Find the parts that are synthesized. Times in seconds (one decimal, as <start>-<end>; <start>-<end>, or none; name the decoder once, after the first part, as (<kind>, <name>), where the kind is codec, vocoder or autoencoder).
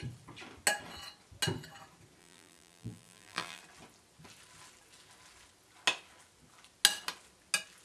2.2-3.6 (vocoder, BigVGAN v2)